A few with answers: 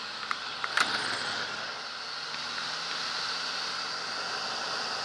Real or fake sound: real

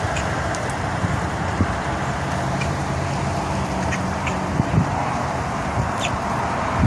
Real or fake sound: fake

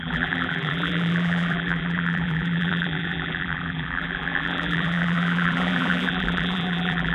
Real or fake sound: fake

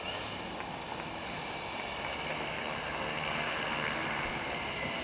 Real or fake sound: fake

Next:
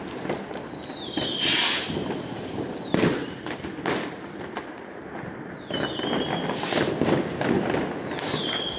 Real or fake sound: real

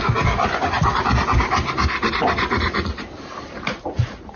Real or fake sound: real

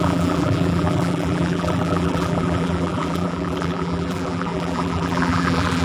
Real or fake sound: fake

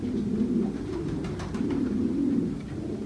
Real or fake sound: real